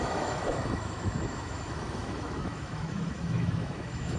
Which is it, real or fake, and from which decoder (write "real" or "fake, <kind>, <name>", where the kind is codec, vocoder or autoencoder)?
fake, autoencoder, DAC-VAE